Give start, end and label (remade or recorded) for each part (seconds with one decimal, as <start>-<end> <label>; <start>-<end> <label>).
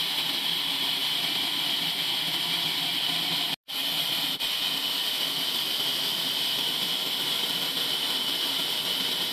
0.0-9.3 recorded